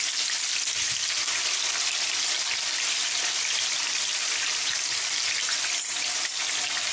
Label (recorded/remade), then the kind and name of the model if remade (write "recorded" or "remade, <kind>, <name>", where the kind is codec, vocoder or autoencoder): recorded